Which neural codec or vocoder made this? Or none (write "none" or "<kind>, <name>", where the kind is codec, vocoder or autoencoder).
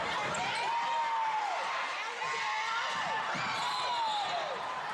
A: none